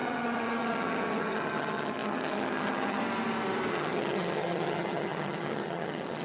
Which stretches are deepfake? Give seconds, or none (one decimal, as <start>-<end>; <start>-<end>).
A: 0.0-3.0; 3.7-6.2